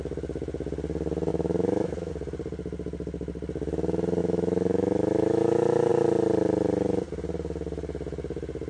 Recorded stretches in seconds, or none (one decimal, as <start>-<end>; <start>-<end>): 0.0-1.3; 2.1-4.2; 5.9-8.7